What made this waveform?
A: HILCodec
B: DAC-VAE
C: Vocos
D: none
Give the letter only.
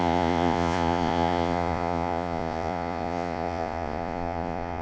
C